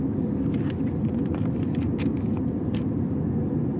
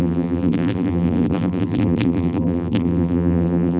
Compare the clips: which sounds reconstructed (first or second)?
second